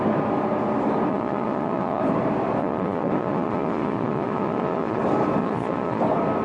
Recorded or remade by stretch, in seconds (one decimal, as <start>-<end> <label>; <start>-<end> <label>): 0.0-1.1 recorded; 1.1-2.0 remade; 2.0-2.6 recorded; 2.6-5.0 remade; 5.0-5.4 recorded; 5.4-6.0 remade; 6.0-6.4 recorded